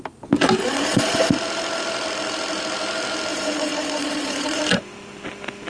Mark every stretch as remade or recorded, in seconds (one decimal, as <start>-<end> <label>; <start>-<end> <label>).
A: 0.0-0.6 recorded; 0.6-1.3 remade; 1.3-3.3 recorded; 3.3-4.6 remade; 4.6-5.7 recorded